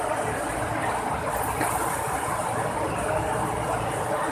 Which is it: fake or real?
real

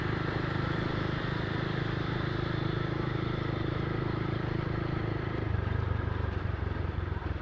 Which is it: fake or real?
fake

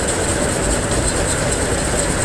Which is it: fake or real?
real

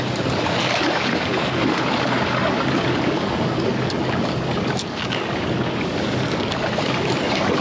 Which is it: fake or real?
fake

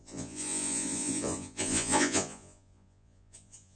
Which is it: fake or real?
fake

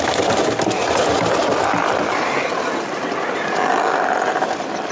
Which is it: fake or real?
real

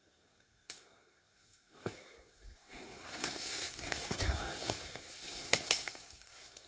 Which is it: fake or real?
fake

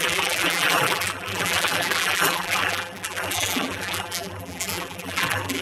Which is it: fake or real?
fake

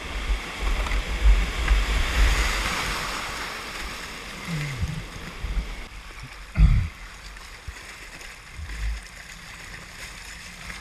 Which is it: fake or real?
real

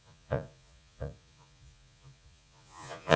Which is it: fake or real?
fake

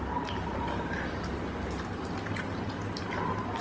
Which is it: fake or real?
real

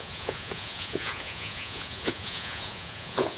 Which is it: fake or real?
fake